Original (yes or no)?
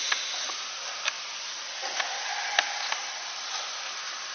yes